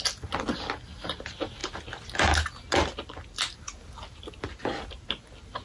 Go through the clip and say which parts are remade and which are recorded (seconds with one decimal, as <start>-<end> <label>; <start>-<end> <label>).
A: 0.0-5.6 recorded